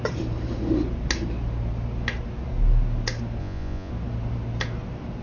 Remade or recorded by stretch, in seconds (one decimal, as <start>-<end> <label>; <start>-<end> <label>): 0.0-3.4 recorded; 3.4-3.9 remade; 3.9-5.2 recorded